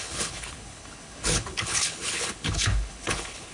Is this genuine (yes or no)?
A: no